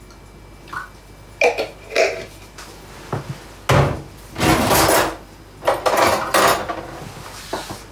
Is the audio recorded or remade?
recorded